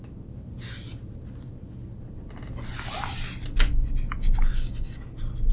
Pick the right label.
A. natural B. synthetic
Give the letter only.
A